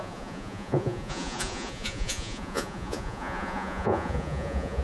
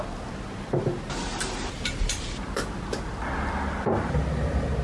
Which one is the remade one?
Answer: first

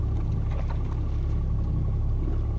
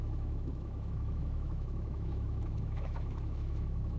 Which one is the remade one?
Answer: second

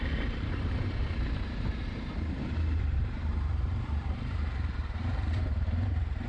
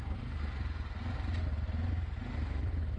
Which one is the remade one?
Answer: first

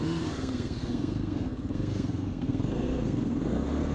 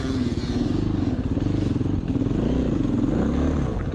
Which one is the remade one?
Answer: first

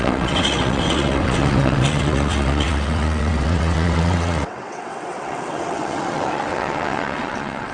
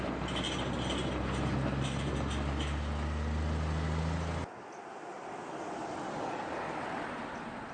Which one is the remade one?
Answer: first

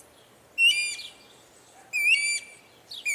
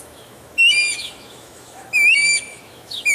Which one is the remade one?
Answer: second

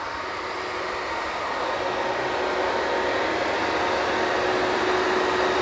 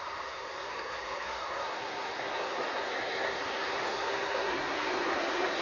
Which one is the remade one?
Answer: second